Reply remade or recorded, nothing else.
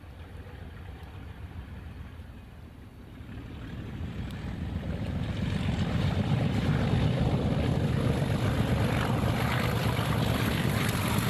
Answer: remade